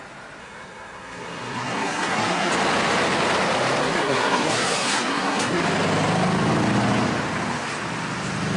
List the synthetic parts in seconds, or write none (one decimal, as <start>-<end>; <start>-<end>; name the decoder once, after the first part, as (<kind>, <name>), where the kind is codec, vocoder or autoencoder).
0.4-2.5 (codec, SNAC); 3.8-5.6